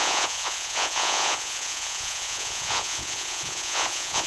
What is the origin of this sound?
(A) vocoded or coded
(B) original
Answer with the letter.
A